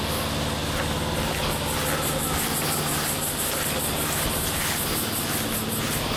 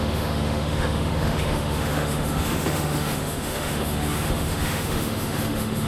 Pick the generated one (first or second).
second